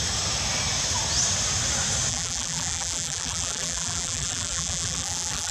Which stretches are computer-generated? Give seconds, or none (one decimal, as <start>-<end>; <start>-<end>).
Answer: 2.1-5.5